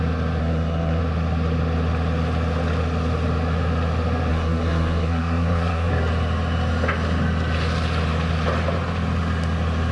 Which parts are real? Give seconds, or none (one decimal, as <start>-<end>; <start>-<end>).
0.0-0.4; 1.0-4.3; 5.9-9.9